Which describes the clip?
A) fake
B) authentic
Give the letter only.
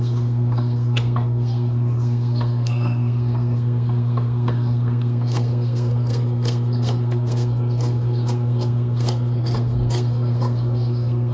A